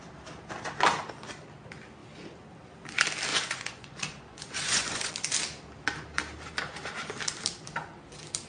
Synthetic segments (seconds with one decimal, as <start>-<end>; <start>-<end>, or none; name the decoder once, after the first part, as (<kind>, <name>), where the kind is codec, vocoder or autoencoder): 3.3-5.1 (vocoder, Vocos)

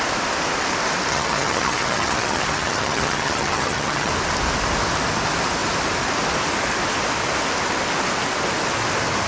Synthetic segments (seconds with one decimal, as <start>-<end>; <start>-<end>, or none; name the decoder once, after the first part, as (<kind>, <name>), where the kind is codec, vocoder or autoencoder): 1.1-4.1 (vocoder, HiFi-GAN)

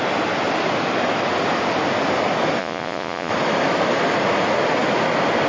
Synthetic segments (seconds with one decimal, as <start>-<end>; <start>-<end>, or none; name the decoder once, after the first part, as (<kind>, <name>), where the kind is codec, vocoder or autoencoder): 2.6-3.3 (vocoder, Vocos)

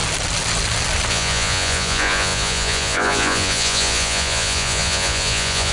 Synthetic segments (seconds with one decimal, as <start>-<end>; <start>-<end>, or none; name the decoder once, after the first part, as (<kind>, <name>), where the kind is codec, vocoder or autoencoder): 1.1-5.7 (vocoder, Vocos)

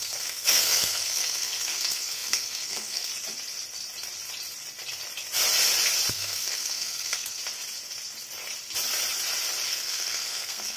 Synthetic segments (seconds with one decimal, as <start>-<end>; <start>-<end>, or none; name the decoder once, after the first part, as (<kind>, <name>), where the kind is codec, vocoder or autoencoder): 0.0-3.1 (codec, SNAC); 6.1-7.4; 9.7-10.8